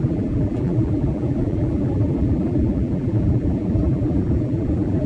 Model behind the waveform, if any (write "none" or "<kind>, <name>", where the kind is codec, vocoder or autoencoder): vocoder, BigVGAN v2